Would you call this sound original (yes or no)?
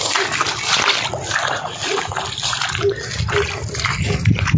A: yes